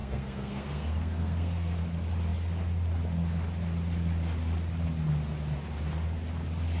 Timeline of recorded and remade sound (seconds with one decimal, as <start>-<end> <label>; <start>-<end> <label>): 0.0-1.8 remade; 1.8-6.8 recorded